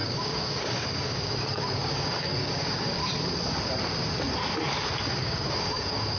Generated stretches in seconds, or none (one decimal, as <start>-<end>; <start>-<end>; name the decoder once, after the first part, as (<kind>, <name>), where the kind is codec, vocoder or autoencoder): 0.0-3.0 (codec, DAC); 5.2-6.2